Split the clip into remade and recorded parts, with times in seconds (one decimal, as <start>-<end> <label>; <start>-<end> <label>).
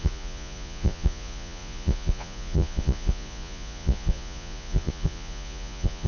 0.0-6.1 remade